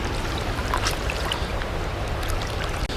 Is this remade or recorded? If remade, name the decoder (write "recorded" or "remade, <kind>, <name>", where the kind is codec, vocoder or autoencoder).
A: recorded